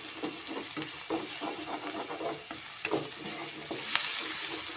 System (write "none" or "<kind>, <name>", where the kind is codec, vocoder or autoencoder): none